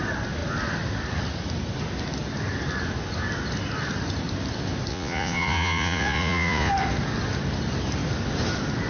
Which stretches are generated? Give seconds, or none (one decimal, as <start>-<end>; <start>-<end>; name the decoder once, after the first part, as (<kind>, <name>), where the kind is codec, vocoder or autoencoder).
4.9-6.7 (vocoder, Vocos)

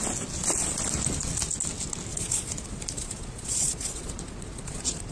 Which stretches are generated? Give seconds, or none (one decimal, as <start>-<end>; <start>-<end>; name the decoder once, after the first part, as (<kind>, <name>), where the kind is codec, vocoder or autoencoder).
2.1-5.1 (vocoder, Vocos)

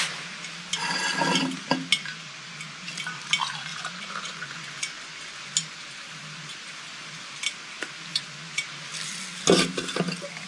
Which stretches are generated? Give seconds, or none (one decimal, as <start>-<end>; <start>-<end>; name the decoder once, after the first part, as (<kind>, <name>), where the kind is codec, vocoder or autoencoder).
3.7-5.4 (vocoder, Vocos)

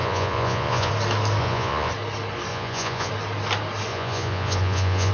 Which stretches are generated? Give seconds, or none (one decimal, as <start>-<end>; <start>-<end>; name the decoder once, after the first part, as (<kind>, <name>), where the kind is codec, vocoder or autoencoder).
0.0-0.9 (vocoder, Vocos); 1.4-1.9; 2.5-3.1; 3.9-5.1

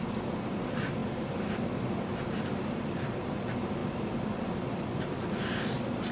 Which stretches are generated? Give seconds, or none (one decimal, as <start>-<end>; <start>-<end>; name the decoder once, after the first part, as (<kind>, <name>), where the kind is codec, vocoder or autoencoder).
none

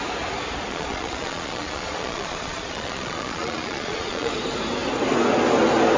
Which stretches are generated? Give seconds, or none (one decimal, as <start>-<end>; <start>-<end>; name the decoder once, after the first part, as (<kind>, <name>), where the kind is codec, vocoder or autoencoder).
0.7-4.3 (vocoder, Vocos)

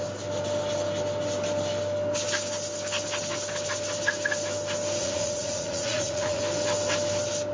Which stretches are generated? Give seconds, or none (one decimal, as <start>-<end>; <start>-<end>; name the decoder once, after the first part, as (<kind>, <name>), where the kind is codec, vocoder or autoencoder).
5.0-6.4 (vocoder, Vocos)

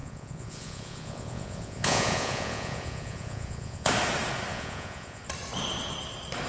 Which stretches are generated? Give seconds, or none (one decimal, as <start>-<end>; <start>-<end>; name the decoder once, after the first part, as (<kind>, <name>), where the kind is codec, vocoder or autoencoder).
0.0-3.9 (vocoder, Vocos); 4.5-5.2